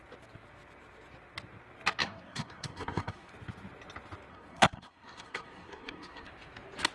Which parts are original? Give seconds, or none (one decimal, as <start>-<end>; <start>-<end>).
0.0-2.0; 3.3-4.3; 6.3-6.9